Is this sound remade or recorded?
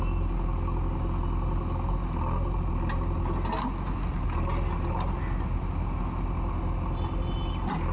recorded